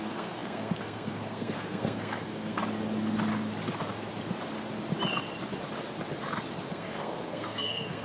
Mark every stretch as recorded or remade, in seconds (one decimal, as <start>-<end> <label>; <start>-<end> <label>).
0.0-2.6 remade; 2.6-6.7 recorded; 6.7-8.0 remade